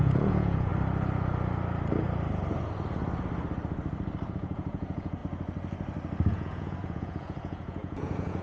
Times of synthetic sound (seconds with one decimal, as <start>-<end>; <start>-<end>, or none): 0.0-0.7; 4.3-5.2; 6.3-8.4